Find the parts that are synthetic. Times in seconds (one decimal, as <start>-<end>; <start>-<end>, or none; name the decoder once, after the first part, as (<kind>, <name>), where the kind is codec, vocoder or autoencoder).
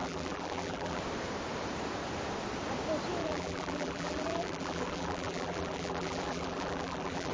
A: 0.0-1.0 (vocoder, BigVGAN v2); 3.2-7.3